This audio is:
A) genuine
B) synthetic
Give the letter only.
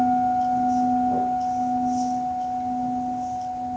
A